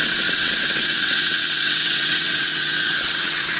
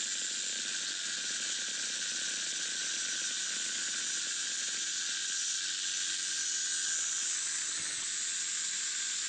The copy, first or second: first